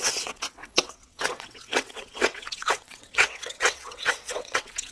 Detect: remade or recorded remade